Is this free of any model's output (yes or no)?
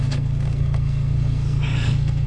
no